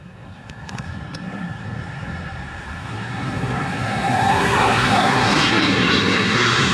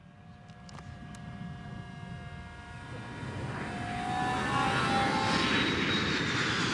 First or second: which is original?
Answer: second